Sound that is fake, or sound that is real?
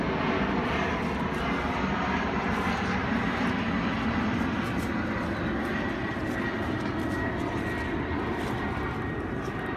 real